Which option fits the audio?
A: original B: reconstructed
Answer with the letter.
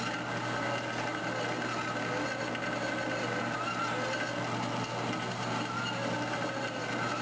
A